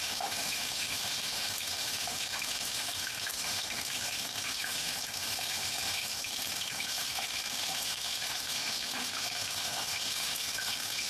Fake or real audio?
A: fake